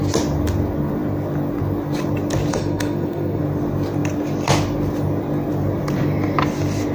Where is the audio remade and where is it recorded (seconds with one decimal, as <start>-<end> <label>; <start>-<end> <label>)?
0.0-2.5 recorded; 2.5-3.4 remade; 3.4-6.9 recorded